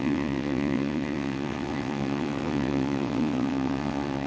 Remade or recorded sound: remade